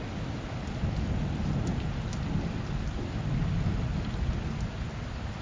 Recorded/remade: recorded